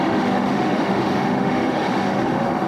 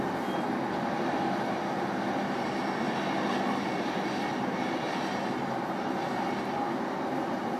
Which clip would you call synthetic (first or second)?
first